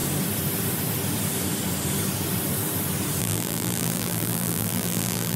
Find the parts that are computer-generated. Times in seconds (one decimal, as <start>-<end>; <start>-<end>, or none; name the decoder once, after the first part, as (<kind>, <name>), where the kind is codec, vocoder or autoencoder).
3.2-5.4 (vocoder, BigVGAN v2)